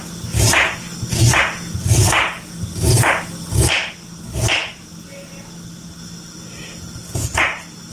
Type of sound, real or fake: real